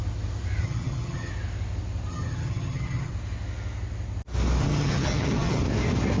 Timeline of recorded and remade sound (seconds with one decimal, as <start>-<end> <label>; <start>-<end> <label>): 0.0-0.6 recorded; 0.6-1.3 remade; 1.3-2.1 recorded; 2.1-3.1 remade; 3.1-4.6 recorded; 4.6-5.6 remade; 5.6-6.2 recorded